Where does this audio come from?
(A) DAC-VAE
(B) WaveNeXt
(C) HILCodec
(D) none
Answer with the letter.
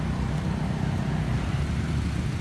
D